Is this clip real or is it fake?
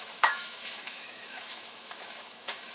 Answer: fake